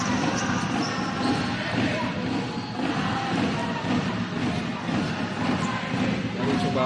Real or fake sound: real